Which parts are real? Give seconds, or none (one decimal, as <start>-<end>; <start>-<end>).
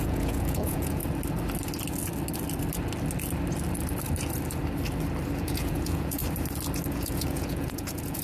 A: 1.0-5.4; 6.2-6.9